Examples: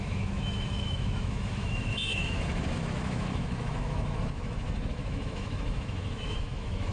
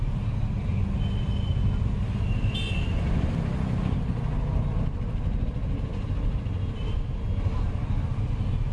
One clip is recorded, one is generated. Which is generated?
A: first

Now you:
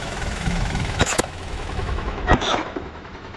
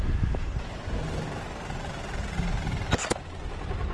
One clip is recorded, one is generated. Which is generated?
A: first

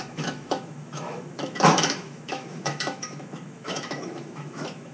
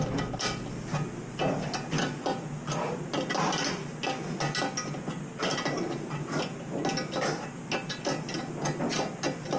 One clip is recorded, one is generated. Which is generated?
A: first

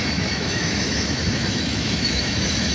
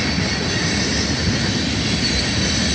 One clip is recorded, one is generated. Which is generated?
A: first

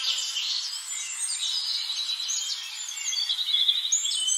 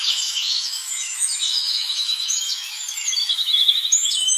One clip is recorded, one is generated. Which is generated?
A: second